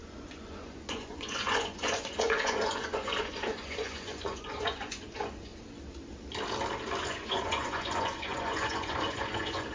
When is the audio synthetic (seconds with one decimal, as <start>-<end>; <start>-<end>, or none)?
0.0-5.5; 7.0-9.7